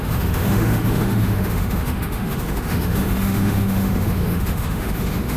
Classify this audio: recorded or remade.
remade